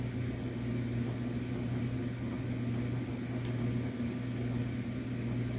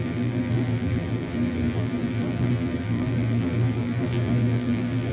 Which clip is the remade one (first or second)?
second